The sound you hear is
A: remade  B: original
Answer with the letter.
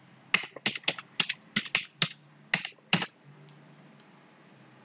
B